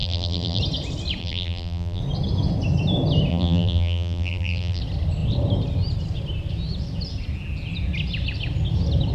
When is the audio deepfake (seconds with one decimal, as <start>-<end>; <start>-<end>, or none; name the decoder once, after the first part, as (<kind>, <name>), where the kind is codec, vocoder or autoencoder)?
0.0-0.6 (vocoder, BigVGAN v2); 1.2-2.0; 3.3-4.8